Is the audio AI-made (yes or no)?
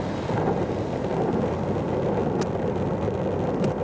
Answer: no